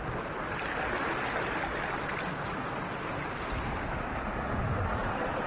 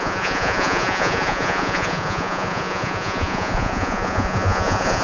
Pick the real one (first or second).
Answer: first